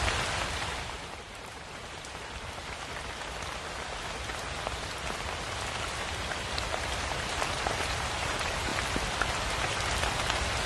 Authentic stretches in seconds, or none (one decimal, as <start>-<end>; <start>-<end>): 2.6-6.1; 8.7-9.5